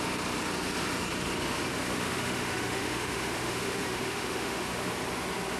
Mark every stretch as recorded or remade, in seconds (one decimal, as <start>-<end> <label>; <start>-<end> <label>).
0.0-1.7 recorded; 1.7-4.9 remade; 4.9-5.6 recorded